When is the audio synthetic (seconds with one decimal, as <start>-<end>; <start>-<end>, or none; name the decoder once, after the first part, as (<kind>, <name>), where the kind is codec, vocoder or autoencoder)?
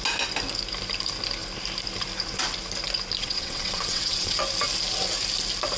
3.2-4.4 (vocoder, WaveNeXt)